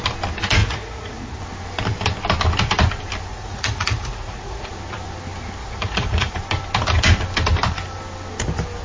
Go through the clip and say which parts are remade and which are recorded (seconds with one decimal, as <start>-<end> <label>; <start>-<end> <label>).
0.0-0.6 recorded; 0.6-1.4 remade; 1.4-3.3 recorded; 3.3-4.7 remade; 4.7-5.6 recorded; 5.6-6.3 remade; 6.3-8.8 recorded